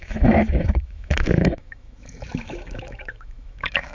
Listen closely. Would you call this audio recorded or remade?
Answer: remade